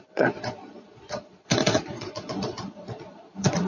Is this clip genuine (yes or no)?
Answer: no